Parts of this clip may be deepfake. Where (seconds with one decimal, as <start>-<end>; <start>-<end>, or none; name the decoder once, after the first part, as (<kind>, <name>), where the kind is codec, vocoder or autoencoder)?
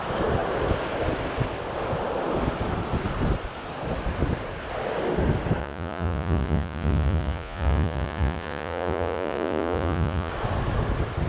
5.6-10.3 (vocoder, Vocos)